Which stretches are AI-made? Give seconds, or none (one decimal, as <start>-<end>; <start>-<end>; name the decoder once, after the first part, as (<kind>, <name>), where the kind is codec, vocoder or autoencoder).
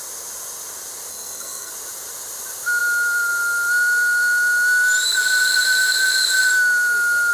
1.1-1.7 (codec, SNAC)